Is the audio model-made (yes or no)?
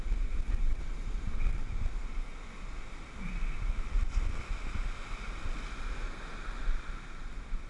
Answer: no